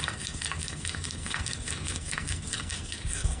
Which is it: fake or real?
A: fake